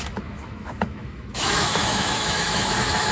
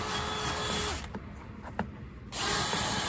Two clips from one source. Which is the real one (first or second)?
second